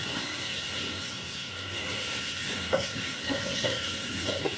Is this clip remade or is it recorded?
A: remade